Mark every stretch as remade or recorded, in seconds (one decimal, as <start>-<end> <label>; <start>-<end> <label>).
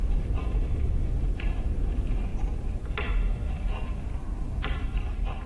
0.0-0.4 recorded; 0.4-1.1 remade; 1.1-5.5 recorded